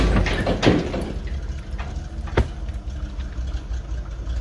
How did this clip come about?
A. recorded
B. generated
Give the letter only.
A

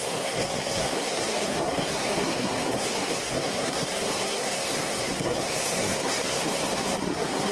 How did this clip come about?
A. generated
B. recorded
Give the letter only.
A